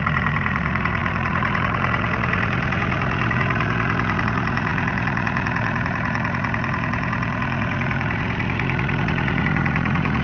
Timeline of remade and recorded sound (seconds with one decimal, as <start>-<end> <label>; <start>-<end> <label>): 0.0-10.2 remade